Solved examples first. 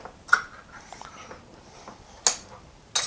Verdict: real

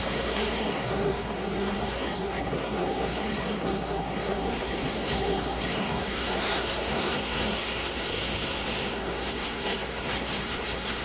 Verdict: fake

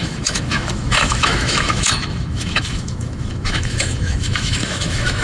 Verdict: fake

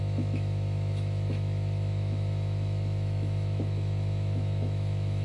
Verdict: fake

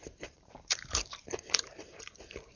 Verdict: fake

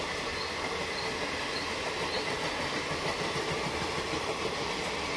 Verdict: real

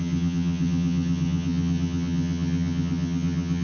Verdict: fake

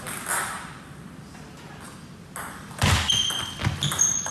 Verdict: real